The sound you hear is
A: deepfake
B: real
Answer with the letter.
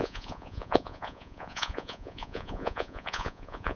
A